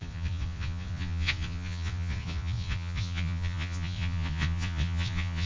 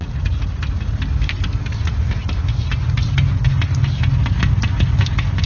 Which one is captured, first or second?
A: second